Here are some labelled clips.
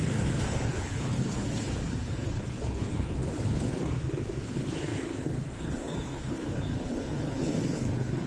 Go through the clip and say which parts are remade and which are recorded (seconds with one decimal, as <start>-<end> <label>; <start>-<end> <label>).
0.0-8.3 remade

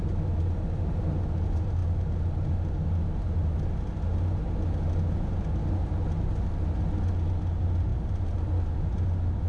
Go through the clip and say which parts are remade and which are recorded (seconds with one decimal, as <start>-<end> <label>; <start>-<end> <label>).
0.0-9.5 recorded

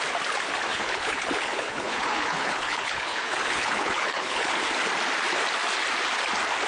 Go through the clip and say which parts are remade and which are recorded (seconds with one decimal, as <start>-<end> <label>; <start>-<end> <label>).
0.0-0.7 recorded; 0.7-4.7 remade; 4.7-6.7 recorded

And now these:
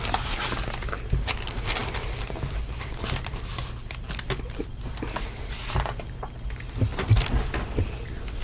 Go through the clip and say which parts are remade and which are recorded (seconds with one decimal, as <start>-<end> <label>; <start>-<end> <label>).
0.0-8.4 recorded

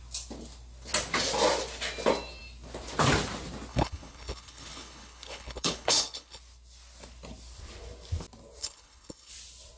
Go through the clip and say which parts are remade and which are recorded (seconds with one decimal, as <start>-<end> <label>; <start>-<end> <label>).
0.0-3.7 recorded; 3.7-6.4 remade; 6.4-8.6 recorded; 8.6-9.3 remade; 9.3-9.8 recorded